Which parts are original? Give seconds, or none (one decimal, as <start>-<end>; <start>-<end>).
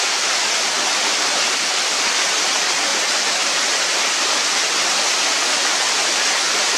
0.0-6.8